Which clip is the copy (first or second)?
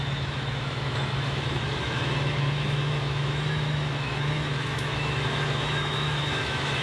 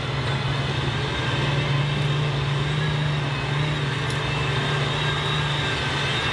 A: first